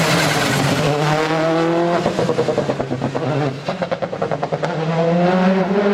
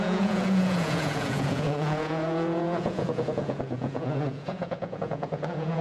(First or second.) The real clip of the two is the first